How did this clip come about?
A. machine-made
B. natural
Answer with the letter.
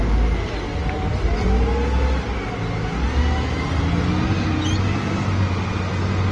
B